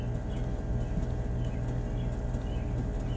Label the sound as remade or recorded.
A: recorded